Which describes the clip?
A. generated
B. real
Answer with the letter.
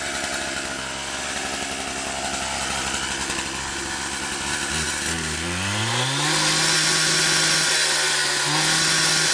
B